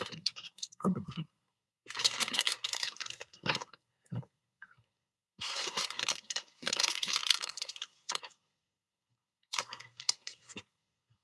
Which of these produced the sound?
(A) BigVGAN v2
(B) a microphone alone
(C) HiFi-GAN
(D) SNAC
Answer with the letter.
D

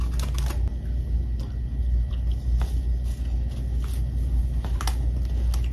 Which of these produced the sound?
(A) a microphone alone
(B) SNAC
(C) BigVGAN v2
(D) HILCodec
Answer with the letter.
A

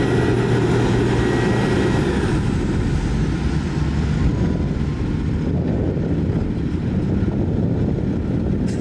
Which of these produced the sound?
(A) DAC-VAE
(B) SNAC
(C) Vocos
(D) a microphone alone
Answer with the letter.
D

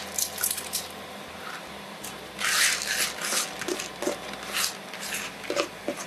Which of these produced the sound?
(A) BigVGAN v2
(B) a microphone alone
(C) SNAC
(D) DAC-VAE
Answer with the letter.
B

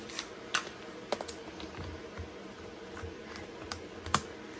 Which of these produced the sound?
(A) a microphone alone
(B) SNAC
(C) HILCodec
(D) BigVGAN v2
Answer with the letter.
A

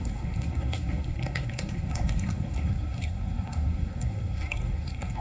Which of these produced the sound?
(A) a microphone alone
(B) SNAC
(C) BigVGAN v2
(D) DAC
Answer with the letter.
B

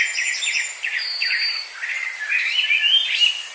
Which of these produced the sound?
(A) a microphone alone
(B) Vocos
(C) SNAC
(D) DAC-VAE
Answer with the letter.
A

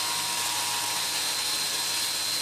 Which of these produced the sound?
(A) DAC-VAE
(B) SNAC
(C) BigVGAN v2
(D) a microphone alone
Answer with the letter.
D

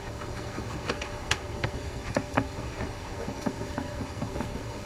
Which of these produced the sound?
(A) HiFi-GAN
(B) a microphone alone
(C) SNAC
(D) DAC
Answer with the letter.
C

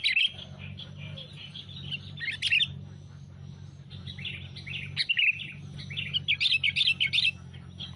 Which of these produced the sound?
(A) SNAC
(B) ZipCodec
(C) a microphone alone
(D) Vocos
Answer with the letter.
C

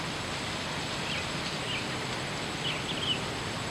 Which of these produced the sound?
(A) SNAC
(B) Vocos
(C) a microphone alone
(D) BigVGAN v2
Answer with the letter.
C